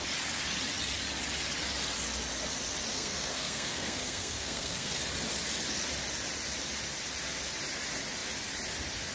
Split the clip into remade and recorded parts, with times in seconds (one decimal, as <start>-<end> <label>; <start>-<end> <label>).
0.0-2.9 recorded; 2.9-5.0 remade; 5.0-9.1 recorded